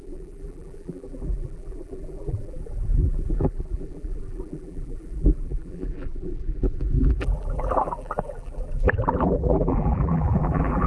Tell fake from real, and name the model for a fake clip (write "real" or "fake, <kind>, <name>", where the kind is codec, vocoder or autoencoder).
fake, vocoder, BigVGAN v2